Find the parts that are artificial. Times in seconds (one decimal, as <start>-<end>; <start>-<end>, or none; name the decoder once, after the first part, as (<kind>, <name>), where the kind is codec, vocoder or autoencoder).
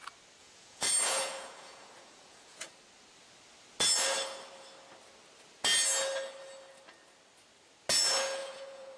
0.4-2.7 (vocoder, Vocos); 8.4-9.0